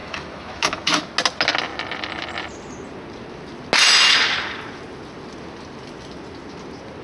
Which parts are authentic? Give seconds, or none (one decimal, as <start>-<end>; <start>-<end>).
1.0-7.0